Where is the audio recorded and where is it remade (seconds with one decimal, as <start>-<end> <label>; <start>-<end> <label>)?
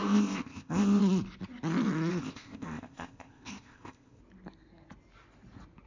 0.0-1.0 remade; 1.0-2.1 recorded; 2.1-4.2 remade; 4.2-5.9 recorded